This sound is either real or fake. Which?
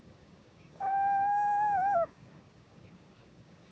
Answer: fake